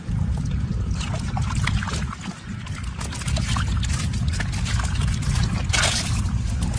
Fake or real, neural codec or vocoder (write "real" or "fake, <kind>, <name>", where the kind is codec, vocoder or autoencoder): real